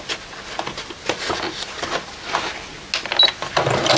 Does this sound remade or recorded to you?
recorded